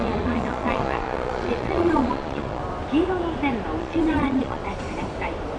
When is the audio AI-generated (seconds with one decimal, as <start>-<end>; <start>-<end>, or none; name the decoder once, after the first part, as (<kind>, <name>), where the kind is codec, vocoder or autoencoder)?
0.0-2.6 (vocoder, Vocos); 3.8-4.6